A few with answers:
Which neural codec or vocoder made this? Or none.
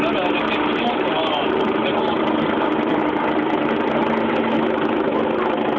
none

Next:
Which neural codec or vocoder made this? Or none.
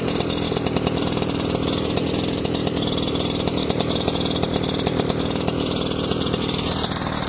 vocoder, BigVGAN v2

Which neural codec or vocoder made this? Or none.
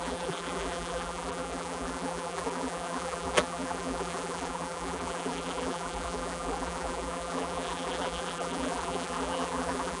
vocoder, BigVGAN v2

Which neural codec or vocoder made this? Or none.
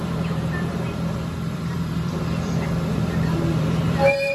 vocoder, BigVGAN v2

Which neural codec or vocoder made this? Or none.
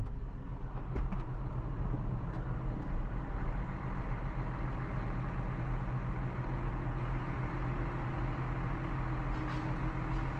none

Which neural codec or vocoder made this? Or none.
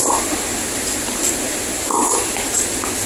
none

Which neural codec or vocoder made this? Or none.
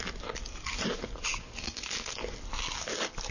none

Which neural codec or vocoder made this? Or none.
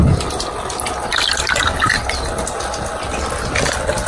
none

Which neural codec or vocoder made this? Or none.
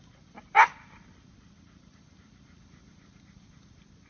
vocoder, BigVGAN v2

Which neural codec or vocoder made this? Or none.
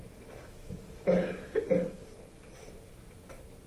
none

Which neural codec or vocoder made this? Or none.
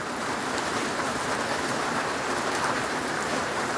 vocoder, BigVGAN v2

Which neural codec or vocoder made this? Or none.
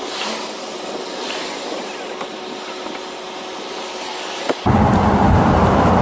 none